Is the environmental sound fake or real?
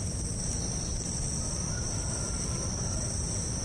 real